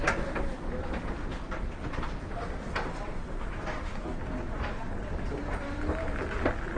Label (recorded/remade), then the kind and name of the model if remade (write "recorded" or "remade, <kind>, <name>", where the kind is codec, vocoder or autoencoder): recorded